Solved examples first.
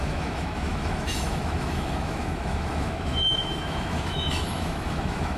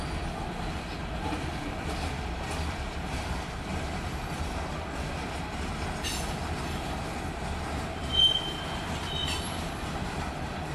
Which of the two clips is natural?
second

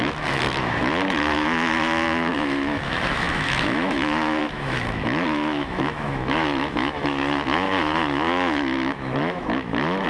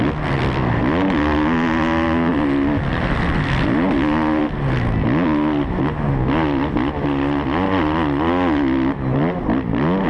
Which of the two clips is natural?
second